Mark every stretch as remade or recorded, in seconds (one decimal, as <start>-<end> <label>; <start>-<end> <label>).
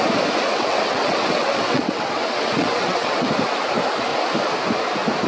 0.0-0.5 recorded; 0.5-3.3 remade; 3.3-5.3 recorded